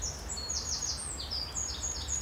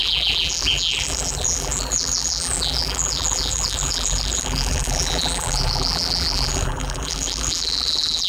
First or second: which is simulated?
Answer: second